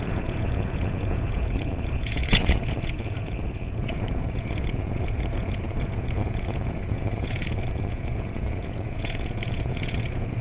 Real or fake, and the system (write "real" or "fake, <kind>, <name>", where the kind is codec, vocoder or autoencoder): fake, vocoder, Vocos